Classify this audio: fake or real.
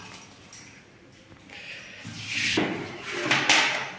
real